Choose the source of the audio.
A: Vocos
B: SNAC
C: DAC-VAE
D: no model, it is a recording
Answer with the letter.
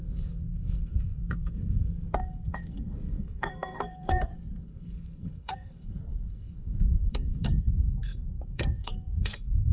B